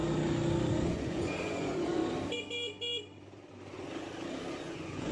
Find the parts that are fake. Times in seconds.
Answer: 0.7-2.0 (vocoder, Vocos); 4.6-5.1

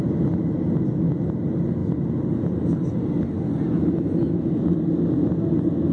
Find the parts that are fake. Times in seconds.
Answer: none

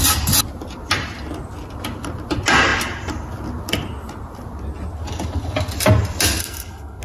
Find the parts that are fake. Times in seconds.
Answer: 6.4-7.0 (codec, SNAC)

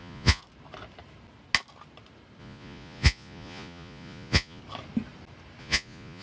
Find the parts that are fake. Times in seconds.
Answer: 0.0-0.4 (vocoder, Vocos); 2.4-4.6; 5.6-6.2

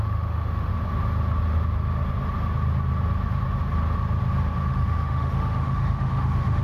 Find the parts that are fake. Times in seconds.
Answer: 0.0-0.7 (autoencoder, DAC-VAE); 4.7-6.6

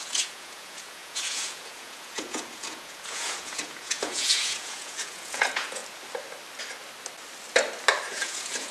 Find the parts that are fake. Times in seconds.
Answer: 0.0-5.8 (vocoder, Vocos); 8.1-8.7